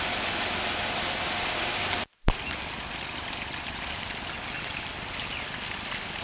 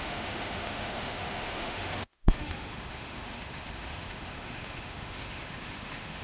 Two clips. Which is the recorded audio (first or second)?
first